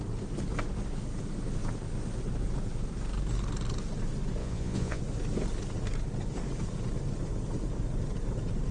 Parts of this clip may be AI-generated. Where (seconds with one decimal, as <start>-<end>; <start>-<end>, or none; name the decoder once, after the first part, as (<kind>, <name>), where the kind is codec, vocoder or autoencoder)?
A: 4.4-5.0 (vocoder, Vocos)